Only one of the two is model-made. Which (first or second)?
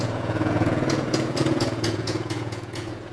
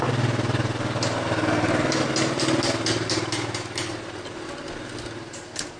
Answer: first